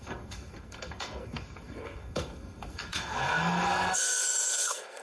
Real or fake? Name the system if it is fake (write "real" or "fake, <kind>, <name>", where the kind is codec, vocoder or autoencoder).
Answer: fake, codec, SNAC